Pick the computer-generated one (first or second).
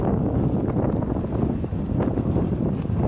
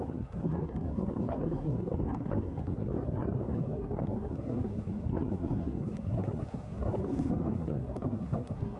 second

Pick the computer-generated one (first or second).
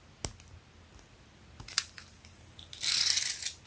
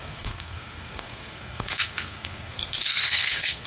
second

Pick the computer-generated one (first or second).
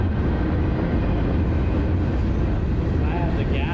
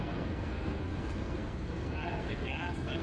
second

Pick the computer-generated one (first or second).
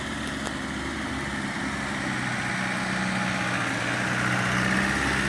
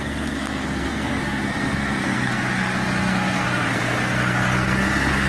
second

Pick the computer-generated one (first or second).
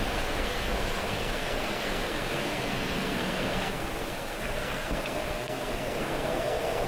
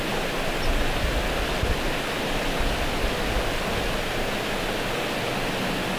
first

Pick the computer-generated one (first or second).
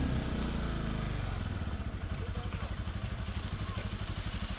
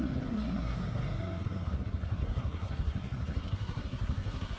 second